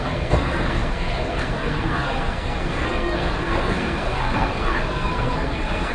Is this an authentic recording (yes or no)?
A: no